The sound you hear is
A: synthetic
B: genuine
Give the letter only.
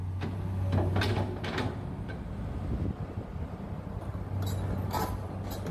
B